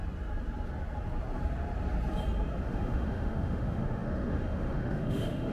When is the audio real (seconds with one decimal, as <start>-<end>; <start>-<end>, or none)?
0.0-2.6

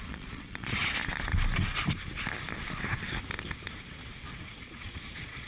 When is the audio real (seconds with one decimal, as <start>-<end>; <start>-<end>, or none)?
0.8-4.1

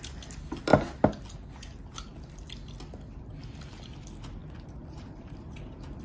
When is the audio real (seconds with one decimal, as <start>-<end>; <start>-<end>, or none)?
0.0-4.4

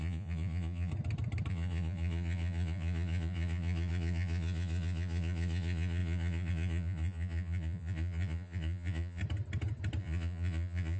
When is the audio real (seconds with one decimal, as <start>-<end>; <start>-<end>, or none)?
0.9-1.5; 9.2-10.0

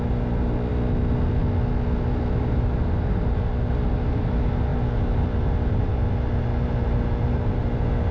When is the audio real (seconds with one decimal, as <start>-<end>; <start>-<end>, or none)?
0.0-8.1

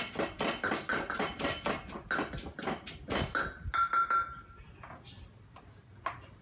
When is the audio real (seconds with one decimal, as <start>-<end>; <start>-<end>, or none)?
0.0-6.4

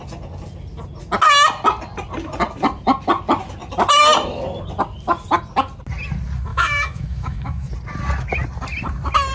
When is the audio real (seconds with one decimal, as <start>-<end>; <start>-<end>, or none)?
0.0-6.5; 7.7-9.3